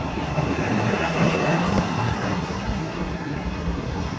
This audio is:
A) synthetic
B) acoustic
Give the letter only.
A